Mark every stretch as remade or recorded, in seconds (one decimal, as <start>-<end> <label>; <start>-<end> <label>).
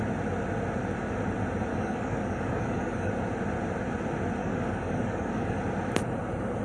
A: 0.0-1.7 recorded; 1.7-3.1 remade; 3.1-4.4 recorded; 4.4-5.6 remade; 5.6-6.6 recorded